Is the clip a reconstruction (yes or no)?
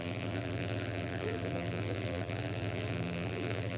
yes